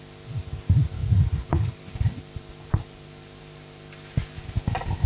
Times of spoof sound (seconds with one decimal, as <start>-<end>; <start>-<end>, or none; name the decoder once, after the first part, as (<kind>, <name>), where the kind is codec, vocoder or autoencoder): 1.0-3.4 (vocoder, BigVGAN v2)

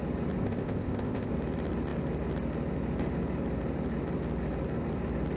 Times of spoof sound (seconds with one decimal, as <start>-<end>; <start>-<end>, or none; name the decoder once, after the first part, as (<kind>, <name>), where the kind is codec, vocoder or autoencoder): 0.4-1.3 (codec, ZipCodec)

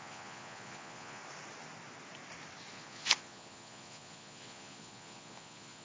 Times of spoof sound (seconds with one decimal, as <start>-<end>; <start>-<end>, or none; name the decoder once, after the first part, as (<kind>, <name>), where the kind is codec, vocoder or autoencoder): 0.0-1.2 (vocoder, Vocos); 2.7-5.8

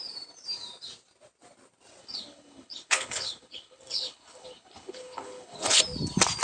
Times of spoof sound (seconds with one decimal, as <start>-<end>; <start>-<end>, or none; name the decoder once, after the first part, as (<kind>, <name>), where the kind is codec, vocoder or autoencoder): 2.0-5.8 (codec, HILCodec)

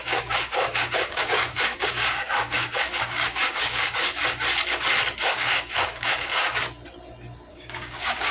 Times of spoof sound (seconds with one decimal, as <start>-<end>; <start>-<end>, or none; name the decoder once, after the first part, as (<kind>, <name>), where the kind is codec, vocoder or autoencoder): 0.0-4.2 (codec, DAC); 5.2-6.5; 7.5-8.3

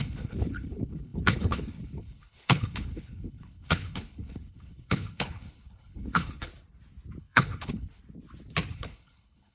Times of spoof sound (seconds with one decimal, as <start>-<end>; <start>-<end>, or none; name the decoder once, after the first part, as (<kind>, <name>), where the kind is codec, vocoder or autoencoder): 0.0-6.5 (codec, HILCodec); 7.2-8.0; 8.7-9.5

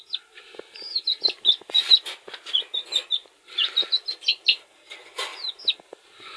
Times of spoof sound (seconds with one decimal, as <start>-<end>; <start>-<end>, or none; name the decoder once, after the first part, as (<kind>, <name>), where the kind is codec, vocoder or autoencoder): none